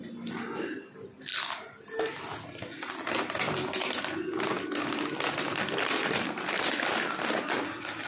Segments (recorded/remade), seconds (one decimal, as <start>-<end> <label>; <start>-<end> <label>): 0.0-8.1 recorded